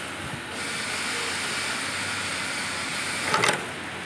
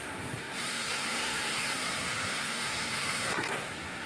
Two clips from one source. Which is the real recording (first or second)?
first